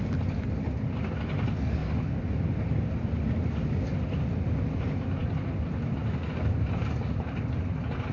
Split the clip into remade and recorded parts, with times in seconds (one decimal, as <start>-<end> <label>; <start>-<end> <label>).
0.0-8.1 recorded